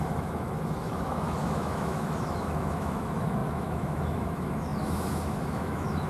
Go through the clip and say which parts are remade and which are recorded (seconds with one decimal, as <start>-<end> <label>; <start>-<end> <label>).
0.0-6.1 remade